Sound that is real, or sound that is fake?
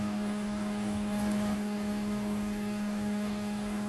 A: fake